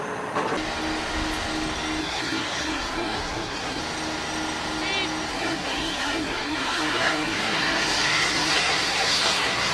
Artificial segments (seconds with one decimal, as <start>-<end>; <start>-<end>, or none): 2.0-3.8; 5.3-9.7